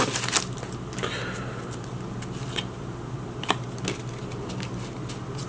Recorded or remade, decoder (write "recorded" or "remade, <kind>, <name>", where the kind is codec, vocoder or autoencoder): recorded